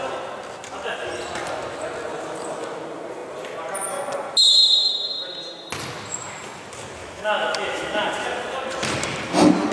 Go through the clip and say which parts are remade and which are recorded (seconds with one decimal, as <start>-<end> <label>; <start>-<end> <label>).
0.0-7.0 recorded; 7.0-8.1 remade; 8.1-9.7 recorded